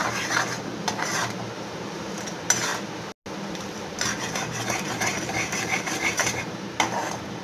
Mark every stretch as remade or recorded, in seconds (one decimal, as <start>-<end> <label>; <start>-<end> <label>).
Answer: 0.0-2.7 remade; 2.7-4.0 recorded; 4.0-7.4 remade